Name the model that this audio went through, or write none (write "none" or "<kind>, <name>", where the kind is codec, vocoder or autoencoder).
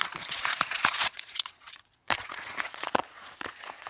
vocoder, Vocos